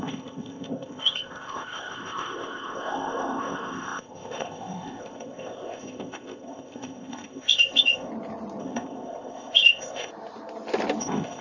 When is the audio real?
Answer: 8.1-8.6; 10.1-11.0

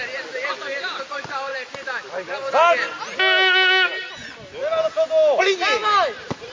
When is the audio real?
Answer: 0.0-6.5

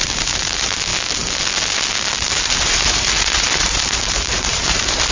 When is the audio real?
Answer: 0.9-2.3

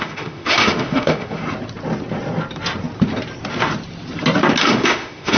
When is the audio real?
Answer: 1.4-4.6

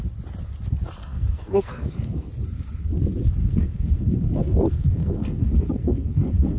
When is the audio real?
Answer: 0.0-1.0; 2.3-3.4

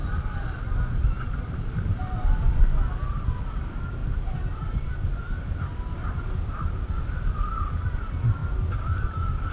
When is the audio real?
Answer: 0.0-9.5

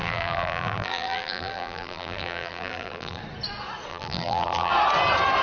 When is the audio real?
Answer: 3.2-3.9; 4.7-5.4

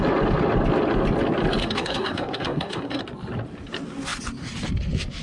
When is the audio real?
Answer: 0.0-1.6; 3.0-5.2